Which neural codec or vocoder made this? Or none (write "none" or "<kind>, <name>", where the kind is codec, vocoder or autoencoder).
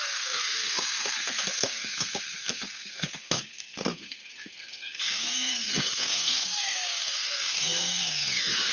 codec, SNAC